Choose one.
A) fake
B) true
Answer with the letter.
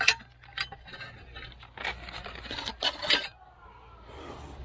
B